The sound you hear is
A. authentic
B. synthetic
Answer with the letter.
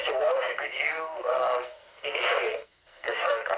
B